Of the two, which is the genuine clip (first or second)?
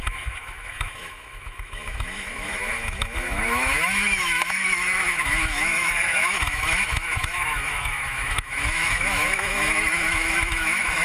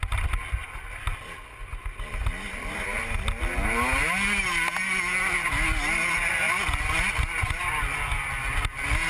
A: second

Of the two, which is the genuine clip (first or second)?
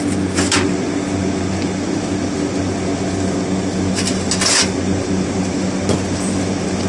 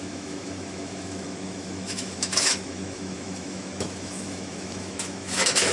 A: first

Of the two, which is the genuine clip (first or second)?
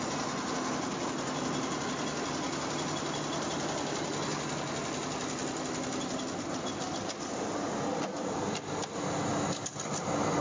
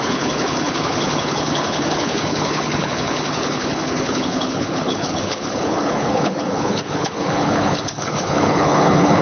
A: first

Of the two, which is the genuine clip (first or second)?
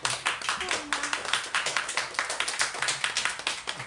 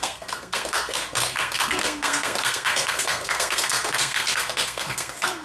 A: first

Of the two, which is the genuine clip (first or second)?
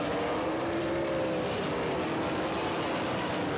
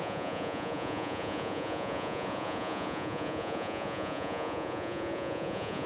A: first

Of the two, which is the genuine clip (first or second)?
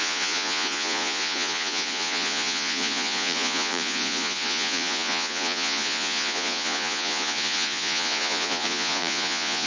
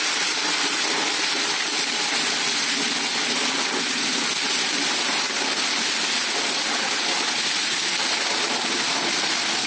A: second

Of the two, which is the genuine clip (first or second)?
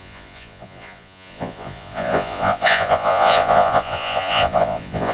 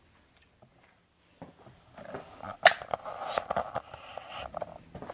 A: second